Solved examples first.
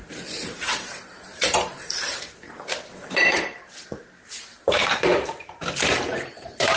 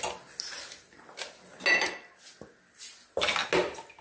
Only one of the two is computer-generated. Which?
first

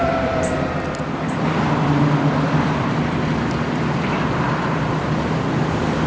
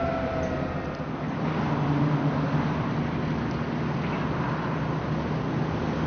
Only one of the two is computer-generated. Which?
first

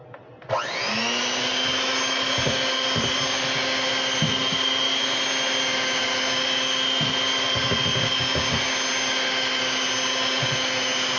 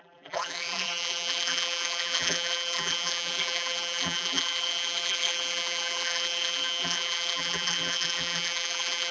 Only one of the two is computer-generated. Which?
second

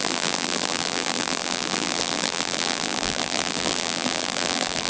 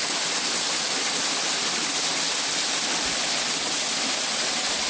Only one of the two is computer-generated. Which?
first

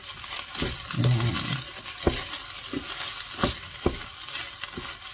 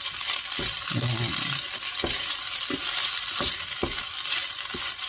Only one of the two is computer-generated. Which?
second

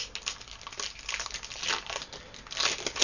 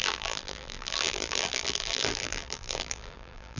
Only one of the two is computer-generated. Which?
second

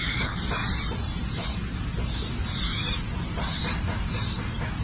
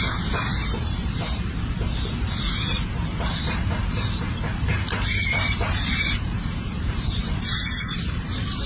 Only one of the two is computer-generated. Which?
second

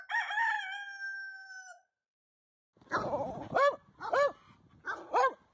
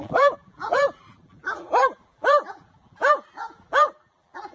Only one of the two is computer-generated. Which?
second